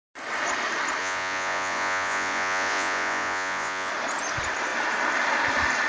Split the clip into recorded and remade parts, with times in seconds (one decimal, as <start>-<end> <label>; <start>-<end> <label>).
0.0-1.0 recorded; 1.0-3.9 remade; 3.9-5.9 recorded